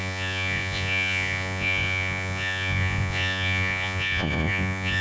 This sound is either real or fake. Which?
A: fake